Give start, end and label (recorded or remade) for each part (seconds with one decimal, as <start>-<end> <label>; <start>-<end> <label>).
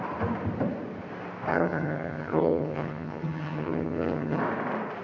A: 0.0-1.5 recorded; 1.5-4.4 remade; 4.4-5.0 recorded